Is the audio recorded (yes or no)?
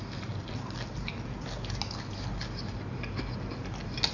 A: yes